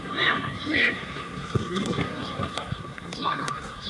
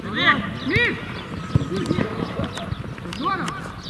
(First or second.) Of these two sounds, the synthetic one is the first